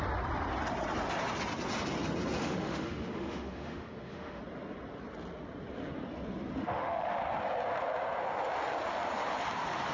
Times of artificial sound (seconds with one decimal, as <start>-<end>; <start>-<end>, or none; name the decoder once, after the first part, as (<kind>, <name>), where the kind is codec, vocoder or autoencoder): 2.4-4.4 (autoencoder, DAC-VAE); 6.6-7.2